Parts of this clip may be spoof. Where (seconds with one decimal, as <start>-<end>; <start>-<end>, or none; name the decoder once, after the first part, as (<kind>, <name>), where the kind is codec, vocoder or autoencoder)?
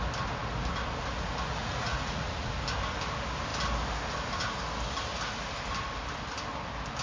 1.6-2.5 (vocoder, Vocos)